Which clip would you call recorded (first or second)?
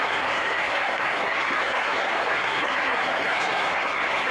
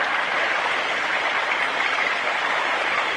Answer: second